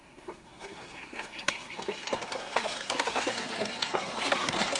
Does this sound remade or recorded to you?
remade